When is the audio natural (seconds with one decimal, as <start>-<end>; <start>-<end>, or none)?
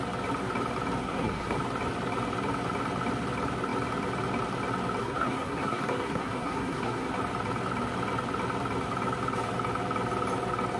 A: 0.0-1.0; 1.6-5.0; 7.1-10.8